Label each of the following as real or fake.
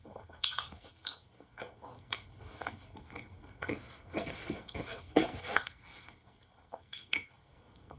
fake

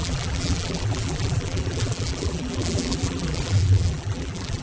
fake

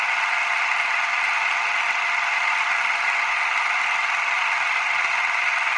real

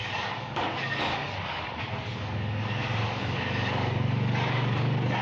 fake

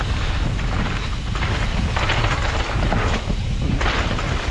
real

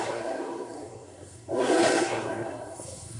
fake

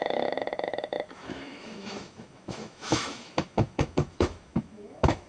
fake